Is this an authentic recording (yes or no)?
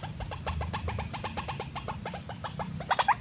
yes